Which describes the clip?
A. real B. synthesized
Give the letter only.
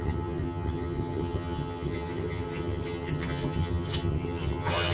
B